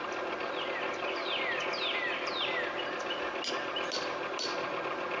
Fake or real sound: real